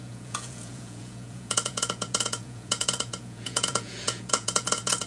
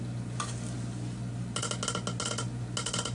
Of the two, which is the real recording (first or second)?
second